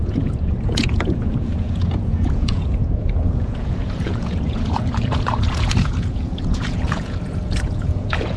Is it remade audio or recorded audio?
remade